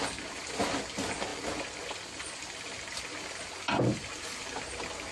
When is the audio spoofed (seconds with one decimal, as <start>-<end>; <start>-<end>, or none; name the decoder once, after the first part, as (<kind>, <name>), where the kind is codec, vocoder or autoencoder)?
none